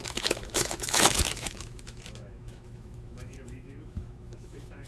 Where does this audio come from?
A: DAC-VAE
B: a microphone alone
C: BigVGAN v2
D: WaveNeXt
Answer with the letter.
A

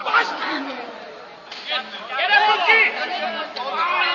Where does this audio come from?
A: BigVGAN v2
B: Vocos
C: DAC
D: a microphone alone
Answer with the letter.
D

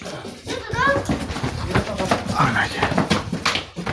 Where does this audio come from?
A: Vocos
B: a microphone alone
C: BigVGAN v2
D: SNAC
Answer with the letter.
B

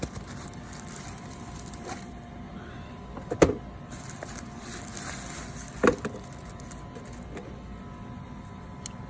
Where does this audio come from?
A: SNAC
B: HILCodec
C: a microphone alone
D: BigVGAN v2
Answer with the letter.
C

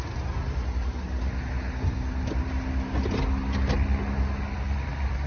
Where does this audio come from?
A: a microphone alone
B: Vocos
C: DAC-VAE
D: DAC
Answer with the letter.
A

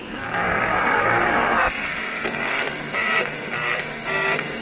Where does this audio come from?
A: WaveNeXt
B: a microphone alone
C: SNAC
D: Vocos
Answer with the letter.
C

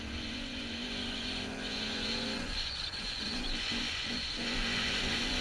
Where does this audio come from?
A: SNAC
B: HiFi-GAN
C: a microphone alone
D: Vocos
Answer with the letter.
D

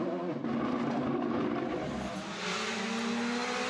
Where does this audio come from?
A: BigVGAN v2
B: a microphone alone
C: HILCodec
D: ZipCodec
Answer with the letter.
B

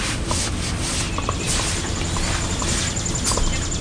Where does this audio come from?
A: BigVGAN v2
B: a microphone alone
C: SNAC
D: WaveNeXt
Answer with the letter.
B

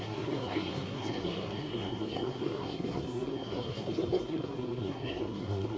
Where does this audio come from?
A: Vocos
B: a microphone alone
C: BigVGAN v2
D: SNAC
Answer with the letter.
D